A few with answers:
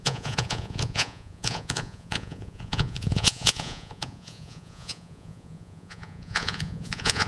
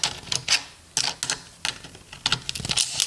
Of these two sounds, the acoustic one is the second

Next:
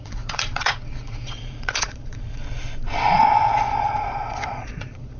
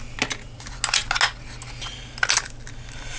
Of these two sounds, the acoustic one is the second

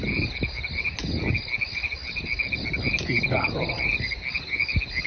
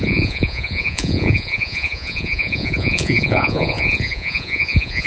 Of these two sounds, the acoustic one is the first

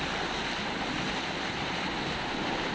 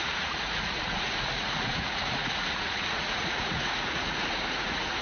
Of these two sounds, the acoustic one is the first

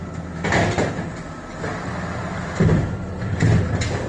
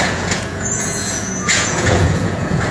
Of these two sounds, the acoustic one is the first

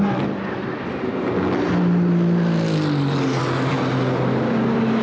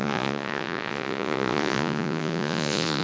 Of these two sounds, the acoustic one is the first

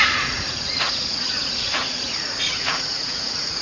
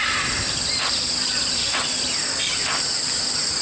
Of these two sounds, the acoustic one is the second